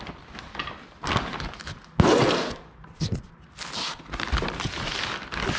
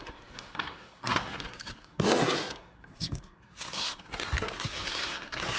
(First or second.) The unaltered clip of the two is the first